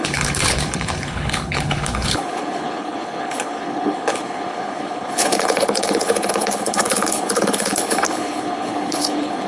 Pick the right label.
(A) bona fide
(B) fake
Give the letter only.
B